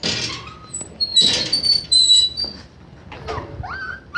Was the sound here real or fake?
real